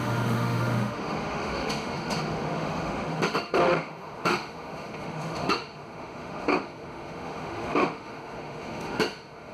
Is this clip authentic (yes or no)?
no